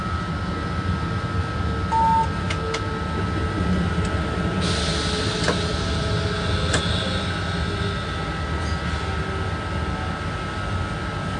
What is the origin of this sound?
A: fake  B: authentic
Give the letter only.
B